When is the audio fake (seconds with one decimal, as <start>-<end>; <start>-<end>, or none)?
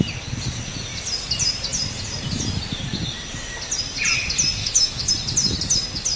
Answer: 4.6-5.1